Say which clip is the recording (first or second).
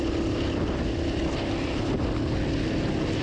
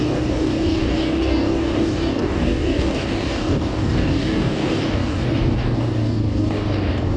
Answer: first